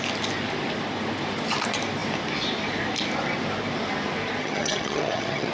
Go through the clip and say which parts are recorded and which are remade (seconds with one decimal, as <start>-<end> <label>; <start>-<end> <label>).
0.0-4.4 recorded; 4.4-5.5 remade